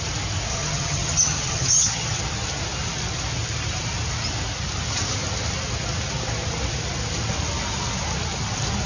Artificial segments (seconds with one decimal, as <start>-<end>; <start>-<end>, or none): 0.5-2.2